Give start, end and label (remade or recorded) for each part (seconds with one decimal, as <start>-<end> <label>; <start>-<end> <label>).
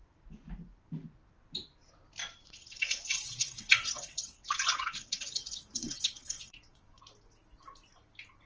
0.0-2.2 recorded; 2.2-7.0 remade; 7.0-8.5 recorded